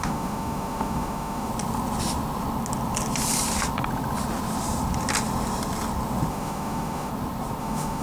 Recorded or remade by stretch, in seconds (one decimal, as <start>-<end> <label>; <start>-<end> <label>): 0.0-1.5 remade; 1.5-6.3 recorded; 6.3-7.1 remade; 7.1-7.6 recorded; 7.6-8.0 remade

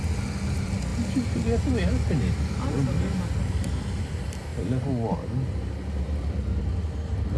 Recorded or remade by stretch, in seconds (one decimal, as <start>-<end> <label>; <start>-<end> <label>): 0.0-7.4 recorded